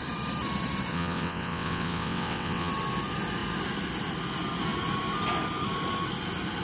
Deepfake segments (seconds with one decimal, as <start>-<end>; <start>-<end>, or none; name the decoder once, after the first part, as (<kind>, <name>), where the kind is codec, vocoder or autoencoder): 0.9-2.7 (vocoder, WaveNeXt)